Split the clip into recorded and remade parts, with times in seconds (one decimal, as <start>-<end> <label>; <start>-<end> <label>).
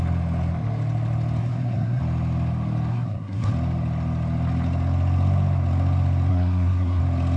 0.0-1.4 recorded; 1.4-2.0 remade; 2.0-2.9 recorded; 2.9-3.5 remade; 3.5-6.3 recorded; 6.3-7.0 remade; 7.0-7.4 recorded